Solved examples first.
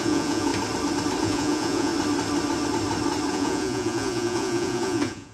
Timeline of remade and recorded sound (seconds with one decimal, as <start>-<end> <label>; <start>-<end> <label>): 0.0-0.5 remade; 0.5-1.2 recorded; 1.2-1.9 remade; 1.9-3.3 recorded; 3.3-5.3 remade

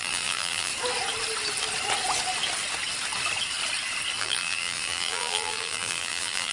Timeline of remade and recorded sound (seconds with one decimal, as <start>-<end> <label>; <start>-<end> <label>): 0.0-0.7 remade; 0.7-4.2 recorded; 4.2-6.5 remade

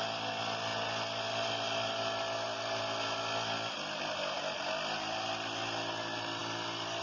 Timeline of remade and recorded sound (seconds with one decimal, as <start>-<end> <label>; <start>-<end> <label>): 0.0-7.0 recorded

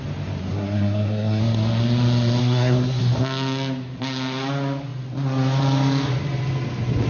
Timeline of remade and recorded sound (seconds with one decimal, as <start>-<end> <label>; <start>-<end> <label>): 0.0-0.4 recorded; 0.4-1.4 remade; 1.4-2.4 recorded; 2.4-3.0 remade; 3.0-7.1 recorded

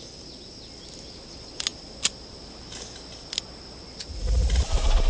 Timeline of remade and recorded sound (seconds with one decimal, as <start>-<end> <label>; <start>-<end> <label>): 0.0-5.1 recorded

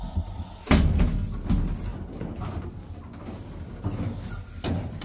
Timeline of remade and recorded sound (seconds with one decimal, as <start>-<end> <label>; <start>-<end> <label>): 0.0-5.0 recorded